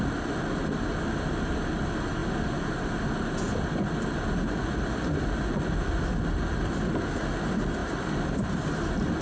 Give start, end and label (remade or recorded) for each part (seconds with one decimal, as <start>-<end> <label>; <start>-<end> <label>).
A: 0.0-9.2 recorded